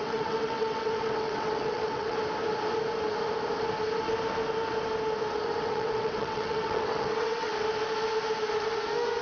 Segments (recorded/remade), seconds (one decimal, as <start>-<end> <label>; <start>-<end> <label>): 0.0-2.2 remade; 2.2-5.6 recorded; 5.6-7.5 remade; 7.5-9.2 recorded